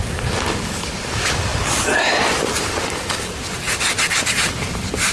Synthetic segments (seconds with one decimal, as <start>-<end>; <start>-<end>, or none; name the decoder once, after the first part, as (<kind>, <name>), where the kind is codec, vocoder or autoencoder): 0.0-5.1 (vocoder, BigVGAN v2)